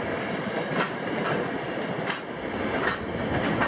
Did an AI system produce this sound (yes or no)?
no